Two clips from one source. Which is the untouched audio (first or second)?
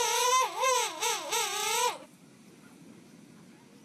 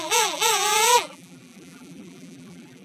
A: first